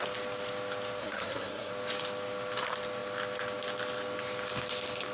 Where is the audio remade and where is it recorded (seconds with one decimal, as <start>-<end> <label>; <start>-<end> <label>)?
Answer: 0.0-1.0 recorded; 1.0-1.7 remade; 1.7-5.1 recorded